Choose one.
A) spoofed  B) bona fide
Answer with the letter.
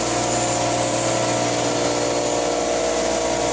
B